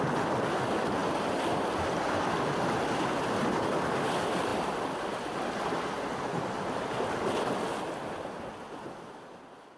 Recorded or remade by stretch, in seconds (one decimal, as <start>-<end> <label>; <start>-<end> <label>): 0.0-9.8 recorded